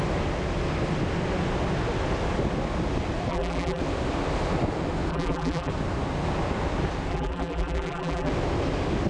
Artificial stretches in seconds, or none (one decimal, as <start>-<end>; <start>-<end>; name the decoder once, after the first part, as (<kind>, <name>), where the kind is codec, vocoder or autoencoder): 3.3-3.8 (vocoder, BigVGAN v2); 5.1-5.7; 7.1-8.3